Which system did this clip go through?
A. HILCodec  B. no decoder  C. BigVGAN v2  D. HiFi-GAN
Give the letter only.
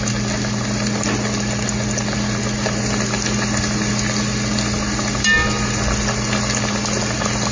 B